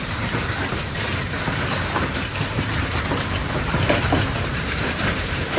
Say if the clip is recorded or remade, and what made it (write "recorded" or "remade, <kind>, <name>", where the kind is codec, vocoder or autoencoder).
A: remade, vocoder, BigVGAN v2